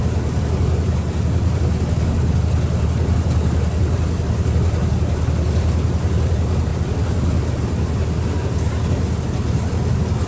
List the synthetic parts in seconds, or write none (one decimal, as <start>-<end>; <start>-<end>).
none